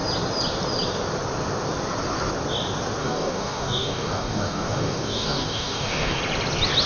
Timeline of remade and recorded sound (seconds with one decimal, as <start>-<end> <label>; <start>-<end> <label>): 0.0-3.0 recorded; 3.0-6.2 remade; 6.2-6.9 recorded